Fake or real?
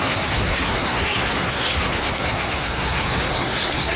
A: fake